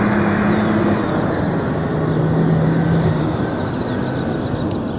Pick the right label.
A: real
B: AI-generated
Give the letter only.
A